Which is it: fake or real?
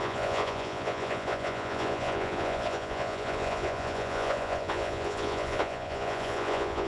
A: fake